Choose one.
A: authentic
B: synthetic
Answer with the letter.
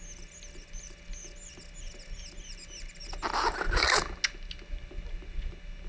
A